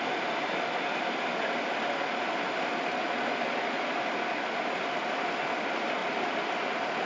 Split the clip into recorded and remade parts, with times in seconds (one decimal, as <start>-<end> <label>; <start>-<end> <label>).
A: 0.0-7.1 recorded